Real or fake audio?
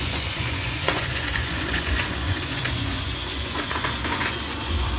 fake